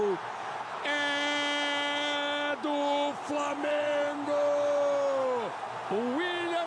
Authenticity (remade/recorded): recorded